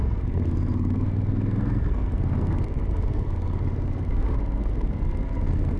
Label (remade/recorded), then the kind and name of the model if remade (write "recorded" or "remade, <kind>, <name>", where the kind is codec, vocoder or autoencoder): remade, codec, SNAC